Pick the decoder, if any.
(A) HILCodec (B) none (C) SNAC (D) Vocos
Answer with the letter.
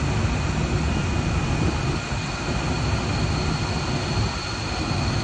B